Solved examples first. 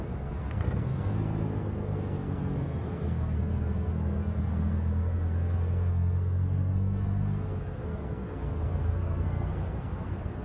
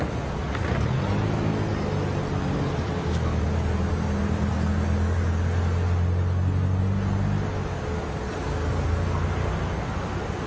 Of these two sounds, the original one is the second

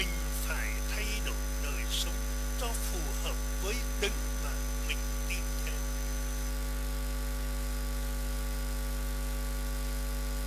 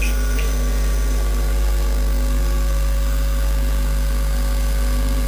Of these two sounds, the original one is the first